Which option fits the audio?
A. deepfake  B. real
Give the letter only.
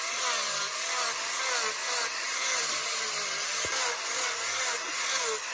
B